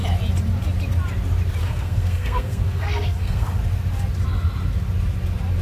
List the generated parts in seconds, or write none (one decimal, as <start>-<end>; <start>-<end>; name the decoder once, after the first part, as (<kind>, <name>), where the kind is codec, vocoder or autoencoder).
1.6-3.6 (codec, SNAC)